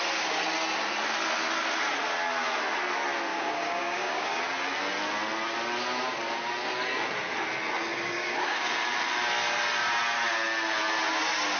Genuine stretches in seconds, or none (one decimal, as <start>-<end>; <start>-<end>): 0.0-3.3; 4.4-7.9; 8.6-11.6